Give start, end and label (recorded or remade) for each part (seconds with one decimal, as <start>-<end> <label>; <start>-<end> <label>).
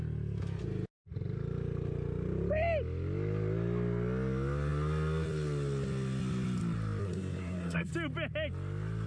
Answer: 0.0-7.0 recorded; 7.0-7.9 remade; 7.9-9.1 recorded